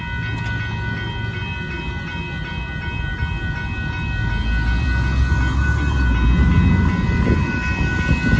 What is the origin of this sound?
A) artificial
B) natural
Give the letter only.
B